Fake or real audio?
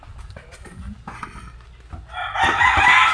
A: real